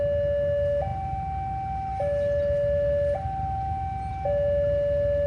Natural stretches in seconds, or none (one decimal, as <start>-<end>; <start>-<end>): 0.0-5.3